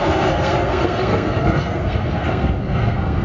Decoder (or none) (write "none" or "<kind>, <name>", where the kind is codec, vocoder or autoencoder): codec, SNAC